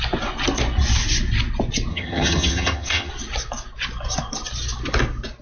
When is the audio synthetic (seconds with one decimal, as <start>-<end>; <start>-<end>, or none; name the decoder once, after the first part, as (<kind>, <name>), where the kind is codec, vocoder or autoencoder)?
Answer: 1.9-3.1 (vocoder, HiFi-GAN)